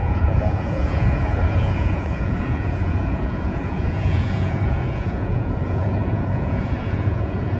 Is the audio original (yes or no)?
no